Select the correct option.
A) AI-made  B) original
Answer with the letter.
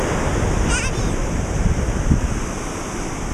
B